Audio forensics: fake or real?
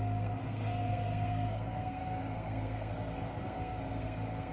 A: fake